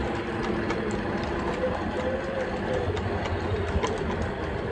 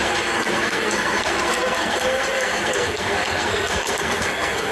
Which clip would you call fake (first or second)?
second